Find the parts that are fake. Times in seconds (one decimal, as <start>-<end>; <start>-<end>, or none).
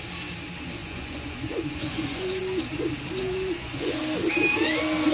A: 0.8-2.4; 3.2-4.0